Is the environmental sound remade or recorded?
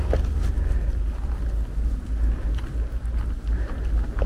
recorded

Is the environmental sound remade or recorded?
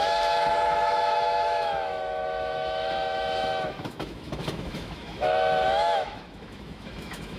remade